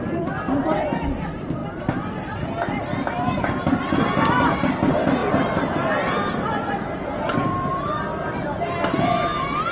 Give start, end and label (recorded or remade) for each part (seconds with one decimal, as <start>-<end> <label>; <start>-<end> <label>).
0.0-1.6 recorded; 1.6-4.7 remade; 4.7-5.2 recorded; 5.2-9.0 remade; 9.0-9.7 recorded